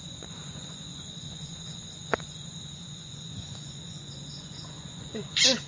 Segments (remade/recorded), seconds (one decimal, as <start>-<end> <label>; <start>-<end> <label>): 0.0-5.7 remade